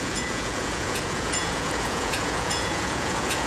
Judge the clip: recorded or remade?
remade